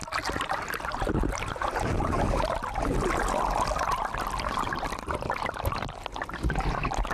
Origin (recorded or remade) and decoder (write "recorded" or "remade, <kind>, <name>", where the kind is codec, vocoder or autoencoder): recorded